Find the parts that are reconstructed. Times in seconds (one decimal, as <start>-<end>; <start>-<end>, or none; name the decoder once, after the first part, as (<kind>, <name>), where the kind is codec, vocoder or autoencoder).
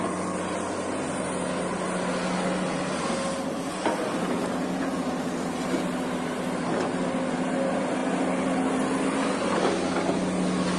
none